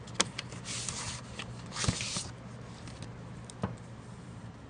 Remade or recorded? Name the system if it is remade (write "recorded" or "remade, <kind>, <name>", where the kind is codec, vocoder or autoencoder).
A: recorded